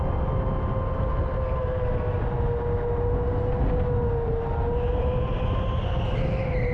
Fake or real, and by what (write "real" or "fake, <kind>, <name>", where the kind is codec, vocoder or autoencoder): real